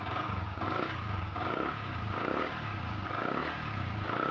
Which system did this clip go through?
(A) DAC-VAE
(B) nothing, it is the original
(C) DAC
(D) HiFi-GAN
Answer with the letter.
C